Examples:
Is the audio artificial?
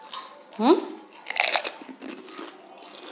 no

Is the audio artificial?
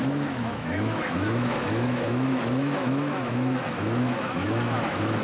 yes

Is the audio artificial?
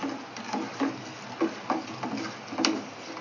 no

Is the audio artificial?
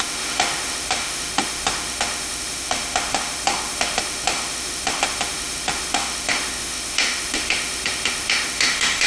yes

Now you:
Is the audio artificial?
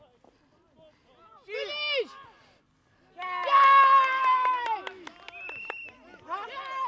no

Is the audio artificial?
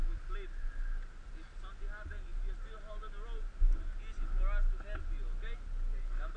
no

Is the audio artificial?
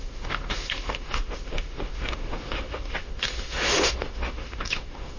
yes